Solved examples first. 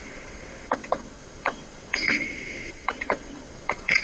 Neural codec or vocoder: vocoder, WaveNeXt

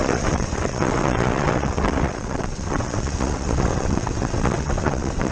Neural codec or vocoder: vocoder, WaveNeXt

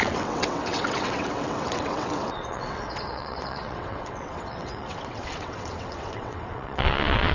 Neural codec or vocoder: vocoder, WaveNeXt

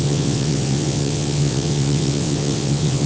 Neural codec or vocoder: vocoder, WaveNeXt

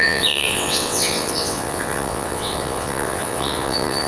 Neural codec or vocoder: vocoder, WaveNeXt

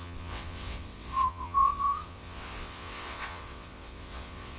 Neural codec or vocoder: vocoder, WaveNeXt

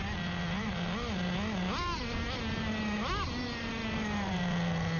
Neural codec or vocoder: none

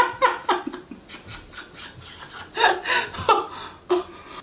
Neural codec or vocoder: none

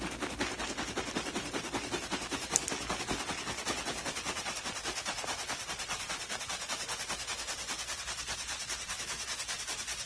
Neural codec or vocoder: none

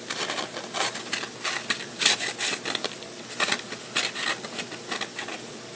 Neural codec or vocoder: none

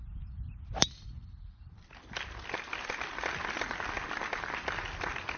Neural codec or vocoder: none